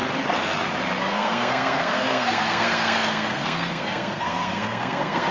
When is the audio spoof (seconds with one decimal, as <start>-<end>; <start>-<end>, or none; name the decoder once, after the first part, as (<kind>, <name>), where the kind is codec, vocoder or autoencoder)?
1.0-5.3 (codec, SNAC)